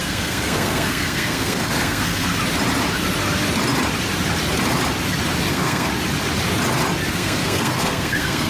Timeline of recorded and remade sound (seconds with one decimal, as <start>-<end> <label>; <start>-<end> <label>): 0.0-2.3 remade; 2.3-5.5 recorded; 5.5-5.9 remade; 5.9-7.1 recorded; 7.1-8.5 remade